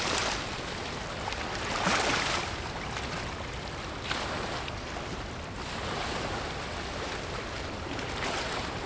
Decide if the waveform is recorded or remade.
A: recorded